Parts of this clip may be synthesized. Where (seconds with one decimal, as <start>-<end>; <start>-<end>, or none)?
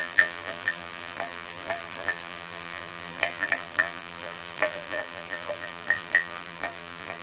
0.0-7.2